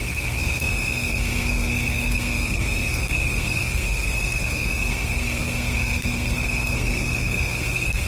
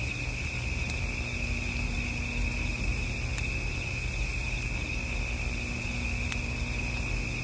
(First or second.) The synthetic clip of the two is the first